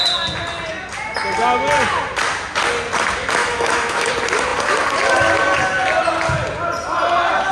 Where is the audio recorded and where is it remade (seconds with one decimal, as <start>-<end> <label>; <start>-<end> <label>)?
0.0-3.4 recorded; 3.4-4.1 remade; 4.1-7.5 recorded